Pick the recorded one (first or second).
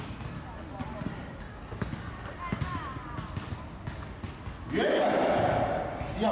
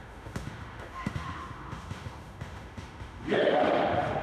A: first